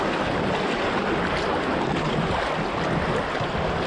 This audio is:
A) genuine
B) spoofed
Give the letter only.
A